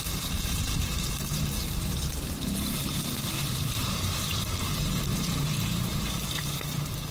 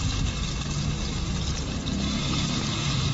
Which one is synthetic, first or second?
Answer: first